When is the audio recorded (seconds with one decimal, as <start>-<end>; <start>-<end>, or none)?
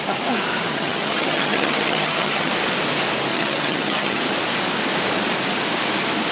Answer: 0.0-0.7; 2.5-3.3; 4.2-6.3